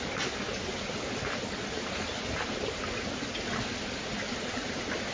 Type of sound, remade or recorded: recorded